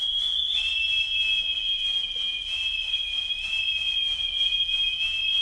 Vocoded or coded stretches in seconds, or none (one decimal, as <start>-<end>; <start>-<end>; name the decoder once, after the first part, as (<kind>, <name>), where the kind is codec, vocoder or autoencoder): none